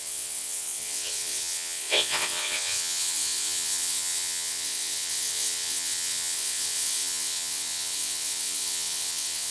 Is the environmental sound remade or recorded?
remade